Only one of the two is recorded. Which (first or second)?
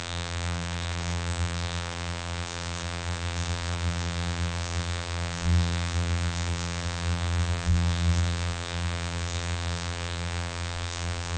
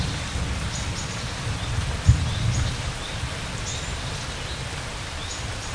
second